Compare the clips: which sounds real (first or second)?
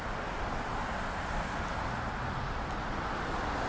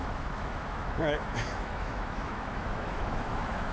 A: first